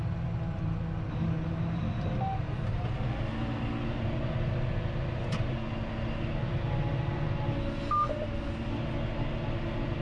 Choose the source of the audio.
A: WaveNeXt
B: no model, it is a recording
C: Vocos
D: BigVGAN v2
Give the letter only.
B